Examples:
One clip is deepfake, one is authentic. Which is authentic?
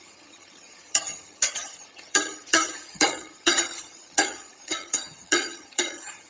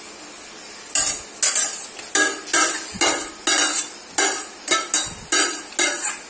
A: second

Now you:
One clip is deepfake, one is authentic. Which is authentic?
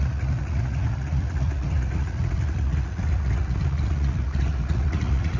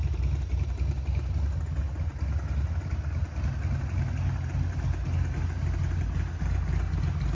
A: second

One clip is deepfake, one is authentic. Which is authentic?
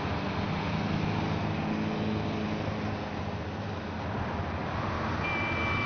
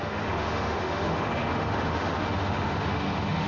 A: first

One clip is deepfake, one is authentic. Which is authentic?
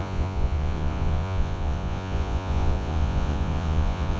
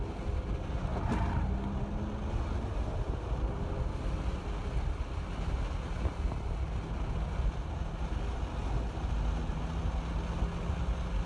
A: second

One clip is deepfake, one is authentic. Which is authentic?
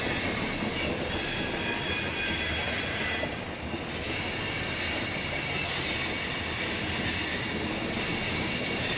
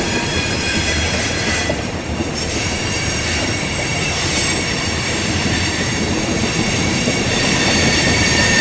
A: first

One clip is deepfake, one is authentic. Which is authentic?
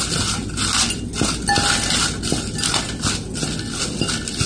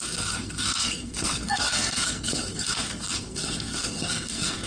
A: first